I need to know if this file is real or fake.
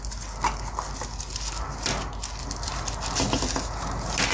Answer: real